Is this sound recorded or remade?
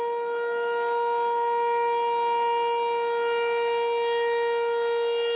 recorded